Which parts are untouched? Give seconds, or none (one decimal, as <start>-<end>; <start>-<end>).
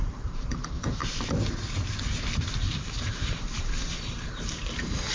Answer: 1.0-2.6